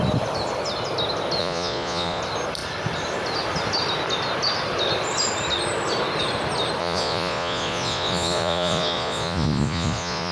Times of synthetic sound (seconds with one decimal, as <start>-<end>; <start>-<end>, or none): 1.4-2.2; 6.8-10.3